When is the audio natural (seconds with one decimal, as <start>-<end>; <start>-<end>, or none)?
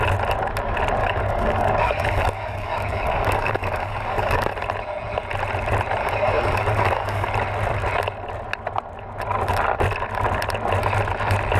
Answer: 0.0-1.0; 4.5-6.0; 7.3-11.6